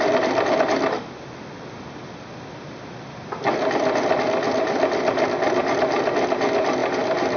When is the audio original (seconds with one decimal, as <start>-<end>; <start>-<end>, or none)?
0.0-7.4